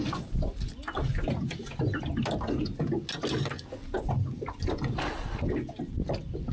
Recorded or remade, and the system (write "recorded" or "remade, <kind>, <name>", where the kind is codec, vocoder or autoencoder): recorded